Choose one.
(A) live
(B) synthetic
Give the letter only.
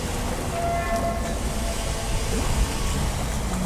A